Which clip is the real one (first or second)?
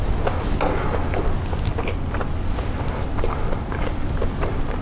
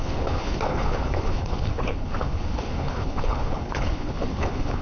first